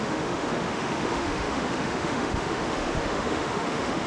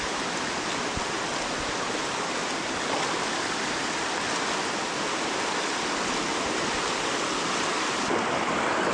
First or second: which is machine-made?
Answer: first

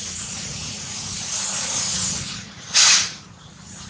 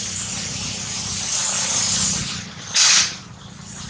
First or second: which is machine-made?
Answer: first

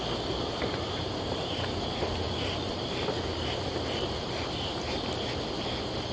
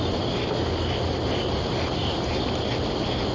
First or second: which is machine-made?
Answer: first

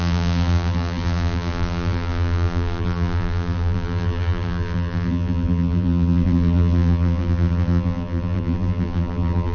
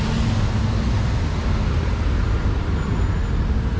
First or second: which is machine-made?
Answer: first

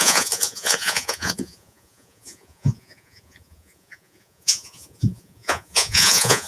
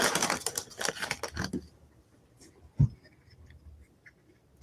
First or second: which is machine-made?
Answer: first